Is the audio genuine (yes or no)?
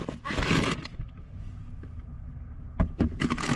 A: yes